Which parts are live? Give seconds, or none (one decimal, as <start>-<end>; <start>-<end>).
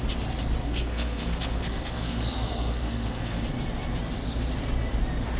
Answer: 0.0-0.6; 3.4-5.4